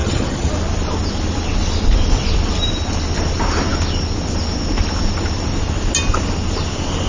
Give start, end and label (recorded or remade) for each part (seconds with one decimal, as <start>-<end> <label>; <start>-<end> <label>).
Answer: 0.0-0.5 remade; 0.5-7.1 recorded